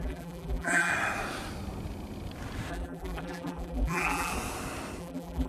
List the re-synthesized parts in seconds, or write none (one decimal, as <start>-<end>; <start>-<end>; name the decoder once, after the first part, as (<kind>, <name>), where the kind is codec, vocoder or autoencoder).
0.0-0.9 (vocoder, BigVGAN v2); 2.7-4.3; 5.0-5.5